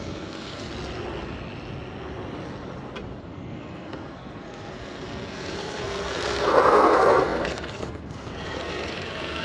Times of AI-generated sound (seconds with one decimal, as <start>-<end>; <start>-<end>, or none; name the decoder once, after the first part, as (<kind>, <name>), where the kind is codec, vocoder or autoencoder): 0.0-0.7 (codec, SNAC); 3.2-9.4